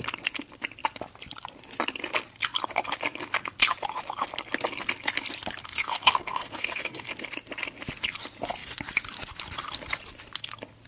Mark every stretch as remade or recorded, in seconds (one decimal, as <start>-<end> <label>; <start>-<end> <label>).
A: 0.0-5.6 recorded; 5.6-7.1 remade; 7.1-10.9 recorded